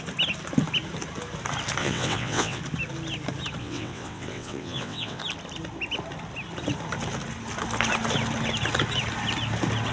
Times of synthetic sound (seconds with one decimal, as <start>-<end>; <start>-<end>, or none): 1.8-2.6; 3.6-5.2